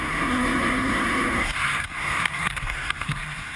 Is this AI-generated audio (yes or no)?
yes